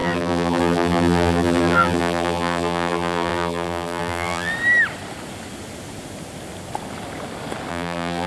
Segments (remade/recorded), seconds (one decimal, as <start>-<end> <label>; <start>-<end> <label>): 0.0-4.5 remade; 4.5-7.7 recorded; 7.7-8.3 remade